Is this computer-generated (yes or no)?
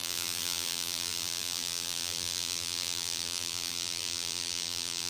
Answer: yes